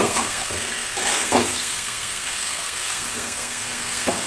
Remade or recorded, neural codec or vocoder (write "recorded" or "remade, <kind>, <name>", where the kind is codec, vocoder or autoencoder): remade, codec, SNAC